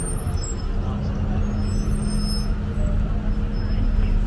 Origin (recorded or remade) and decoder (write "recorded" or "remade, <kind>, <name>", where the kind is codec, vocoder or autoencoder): recorded